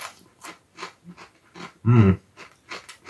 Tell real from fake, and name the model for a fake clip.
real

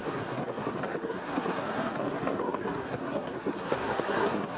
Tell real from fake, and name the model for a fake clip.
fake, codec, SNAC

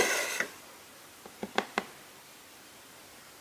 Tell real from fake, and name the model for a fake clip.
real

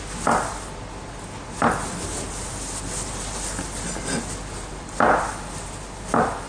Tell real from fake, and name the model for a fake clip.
real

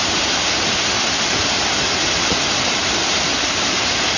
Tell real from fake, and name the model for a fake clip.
real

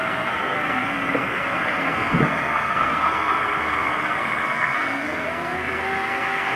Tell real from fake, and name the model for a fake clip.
fake, codec, SNAC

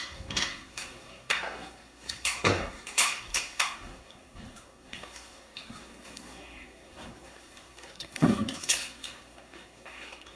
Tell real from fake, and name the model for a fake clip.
fake, codec, SNAC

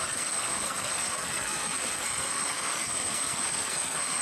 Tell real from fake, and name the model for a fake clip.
fake, codec, SNAC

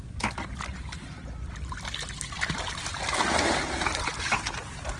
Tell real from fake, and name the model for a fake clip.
real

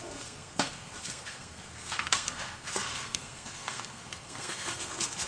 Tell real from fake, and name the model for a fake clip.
fake, codec, SNAC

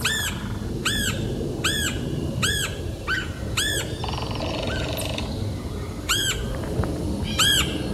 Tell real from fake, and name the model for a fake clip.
real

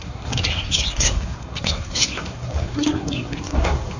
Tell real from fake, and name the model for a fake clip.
fake, codec, SNAC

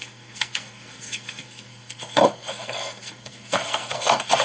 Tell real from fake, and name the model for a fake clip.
fake, codec, SNAC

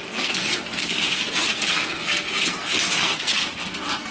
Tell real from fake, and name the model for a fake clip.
fake, codec, SNAC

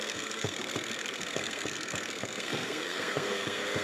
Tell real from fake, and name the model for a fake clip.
fake, codec, SNAC